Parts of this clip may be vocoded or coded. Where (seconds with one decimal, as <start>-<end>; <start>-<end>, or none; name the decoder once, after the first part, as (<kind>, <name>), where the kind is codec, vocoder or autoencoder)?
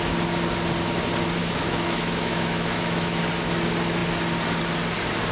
1.4-3.2 (autoencoder, DAC-VAE)